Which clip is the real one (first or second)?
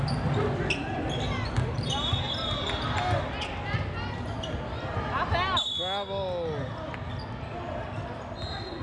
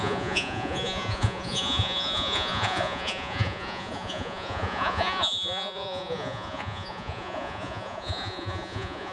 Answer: first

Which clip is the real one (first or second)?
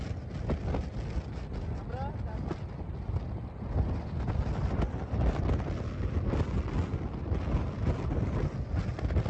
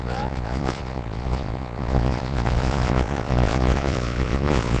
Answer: first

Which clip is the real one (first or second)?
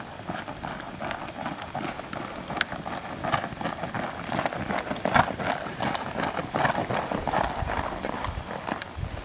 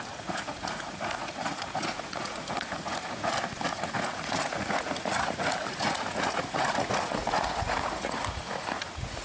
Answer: first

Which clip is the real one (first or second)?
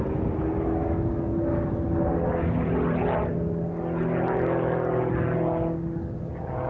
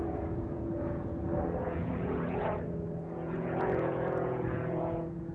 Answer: first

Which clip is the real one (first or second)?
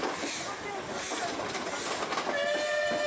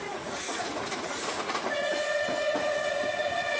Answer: first